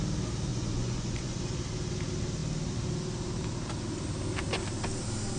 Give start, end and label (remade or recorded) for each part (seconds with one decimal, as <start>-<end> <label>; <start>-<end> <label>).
0.0-0.5 recorded; 0.5-1.4 remade; 1.4-5.4 recorded